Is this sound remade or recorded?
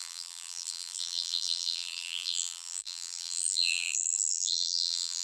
remade